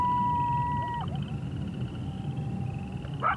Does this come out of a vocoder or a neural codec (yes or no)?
no